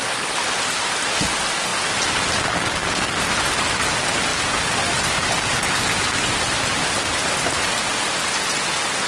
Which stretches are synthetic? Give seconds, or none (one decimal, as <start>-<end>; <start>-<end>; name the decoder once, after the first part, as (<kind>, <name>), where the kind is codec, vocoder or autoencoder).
none